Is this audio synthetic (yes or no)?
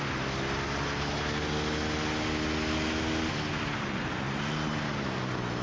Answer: no